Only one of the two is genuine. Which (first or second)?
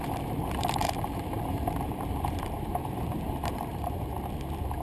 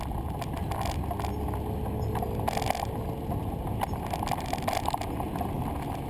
second